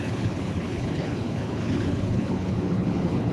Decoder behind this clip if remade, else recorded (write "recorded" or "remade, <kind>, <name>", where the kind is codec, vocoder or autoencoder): remade, codec, HILCodec